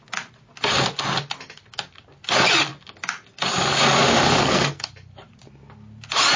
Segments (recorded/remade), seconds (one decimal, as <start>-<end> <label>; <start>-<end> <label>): 0.0-4.4 recorded; 4.4-4.9 remade; 4.9-6.4 recorded